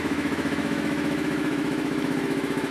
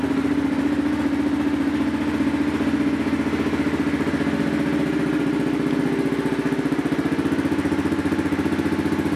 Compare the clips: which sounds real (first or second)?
second